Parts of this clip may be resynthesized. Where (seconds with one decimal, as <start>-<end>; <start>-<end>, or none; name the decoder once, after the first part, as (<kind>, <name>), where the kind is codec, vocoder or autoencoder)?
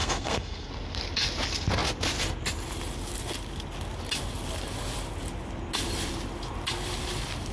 0.0-0.7 (codec, SNAC)